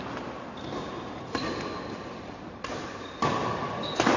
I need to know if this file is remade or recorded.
recorded